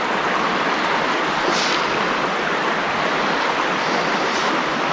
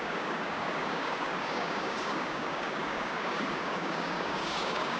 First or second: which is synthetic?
second